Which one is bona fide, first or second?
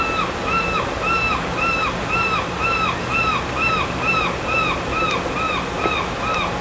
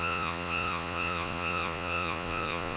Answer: first